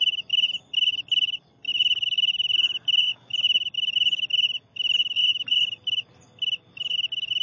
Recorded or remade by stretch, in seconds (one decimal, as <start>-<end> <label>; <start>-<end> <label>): 0.0-7.4 recorded